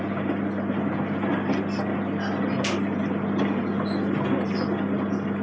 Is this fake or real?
real